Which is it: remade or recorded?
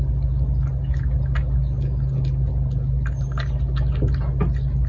recorded